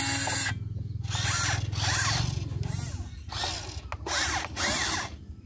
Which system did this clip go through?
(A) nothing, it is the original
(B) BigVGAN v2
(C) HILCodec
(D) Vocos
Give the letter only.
A